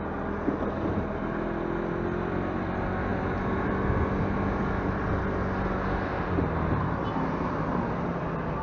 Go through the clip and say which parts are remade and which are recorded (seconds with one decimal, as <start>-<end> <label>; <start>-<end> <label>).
0.0-8.6 recorded